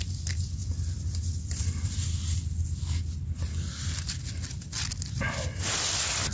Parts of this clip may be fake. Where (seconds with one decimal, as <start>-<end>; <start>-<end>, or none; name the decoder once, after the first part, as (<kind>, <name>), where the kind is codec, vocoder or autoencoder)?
none